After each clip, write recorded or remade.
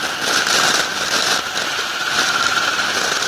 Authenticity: recorded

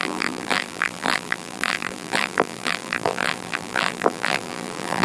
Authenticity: remade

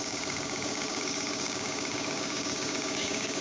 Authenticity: remade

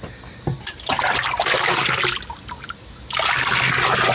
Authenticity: recorded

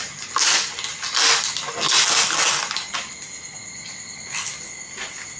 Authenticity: recorded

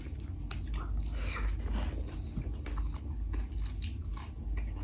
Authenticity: recorded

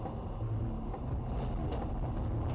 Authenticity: recorded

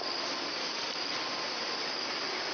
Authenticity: recorded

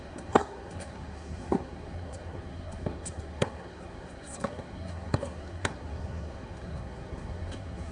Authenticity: remade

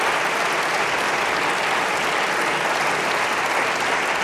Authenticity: recorded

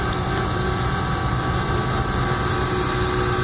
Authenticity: recorded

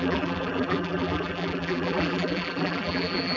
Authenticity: remade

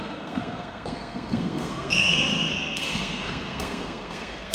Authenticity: remade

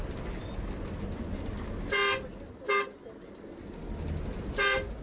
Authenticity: recorded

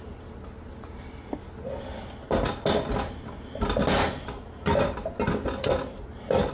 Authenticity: recorded